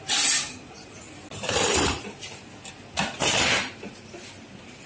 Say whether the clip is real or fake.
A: real